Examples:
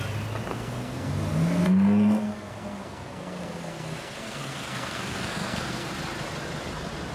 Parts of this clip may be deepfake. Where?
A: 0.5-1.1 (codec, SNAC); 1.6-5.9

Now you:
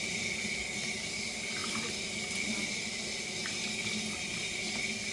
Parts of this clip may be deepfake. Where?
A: none

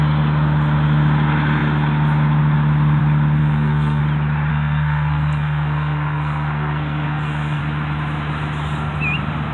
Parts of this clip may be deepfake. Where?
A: 3.4-4.0 (codec, SNAC); 4.5-7.6

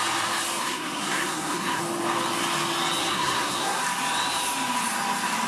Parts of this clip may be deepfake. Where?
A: 0.6-1.8 (codec, SNAC); 3.0-3.8

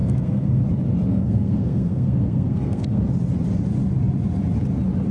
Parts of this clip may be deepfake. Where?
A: 0.0-0.6 (codec, SNAC); 1.1-3.0

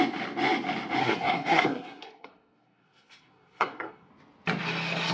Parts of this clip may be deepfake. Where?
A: 1.0-4.1 (codec, SNAC)